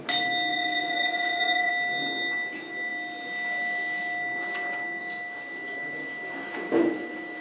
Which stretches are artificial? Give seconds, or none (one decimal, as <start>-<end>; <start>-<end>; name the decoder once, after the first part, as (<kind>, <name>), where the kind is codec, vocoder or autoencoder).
0.5-1.7 (vocoder, Vocos)